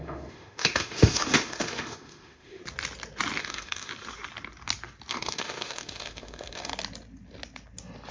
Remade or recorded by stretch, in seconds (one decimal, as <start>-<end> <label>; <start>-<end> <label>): 0.0-2.6 remade; 2.6-3.4 recorded; 3.4-3.9 remade; 3.9-5.1 recorded; 5.1-6.7 remade; 6.7-8.1 recorded

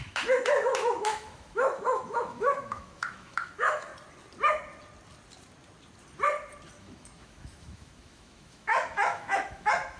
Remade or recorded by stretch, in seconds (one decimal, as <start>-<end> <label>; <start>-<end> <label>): 0.0-3.9 remade; 3.9-6.8 recorded; 6.8-10.0 remade

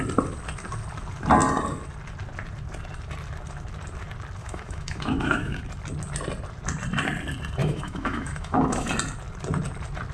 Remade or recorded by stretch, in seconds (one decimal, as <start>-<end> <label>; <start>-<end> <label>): 0.0-4.4 recorded; 4.4-5.6 remade; 5.6-7.6 recorded; 7.6-8.9 remade; 8.9-10.1 recorded

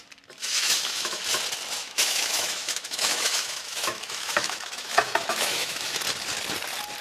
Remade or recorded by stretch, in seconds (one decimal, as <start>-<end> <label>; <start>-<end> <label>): 0.0-0.4 recorded; 0.4-1.2 remade; 1.2-1.8 recorded; 1.8-6.0 remade; 6.0-7.0 recorded